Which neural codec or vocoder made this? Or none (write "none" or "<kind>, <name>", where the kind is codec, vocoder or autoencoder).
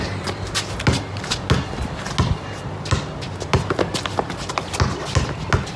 none